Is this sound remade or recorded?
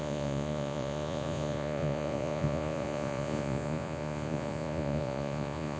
remade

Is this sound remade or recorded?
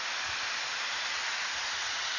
recorded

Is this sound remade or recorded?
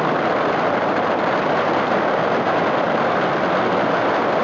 recorded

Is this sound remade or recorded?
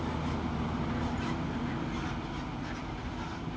recorded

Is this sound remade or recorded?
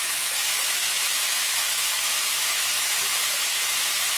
remade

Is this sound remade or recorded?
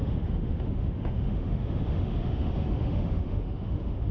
remade